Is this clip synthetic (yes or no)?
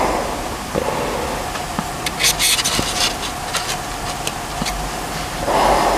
no